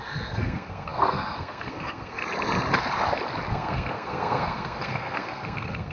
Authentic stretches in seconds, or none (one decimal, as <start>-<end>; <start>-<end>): 2.2-3.5